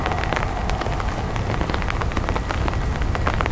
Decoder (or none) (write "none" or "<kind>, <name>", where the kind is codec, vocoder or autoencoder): none